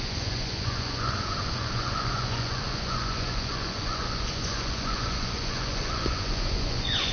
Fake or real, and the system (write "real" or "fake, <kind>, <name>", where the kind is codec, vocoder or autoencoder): fake, vocoder, Vocos